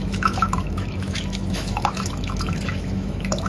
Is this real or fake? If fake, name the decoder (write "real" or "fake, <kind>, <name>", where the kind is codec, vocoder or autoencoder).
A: fake, autoencoder, DAC-VAE